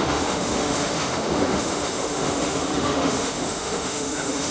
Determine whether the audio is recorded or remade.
remade